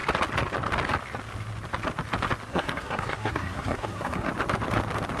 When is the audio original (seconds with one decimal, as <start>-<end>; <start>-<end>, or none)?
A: 0.0-2.5; 4.3-5.2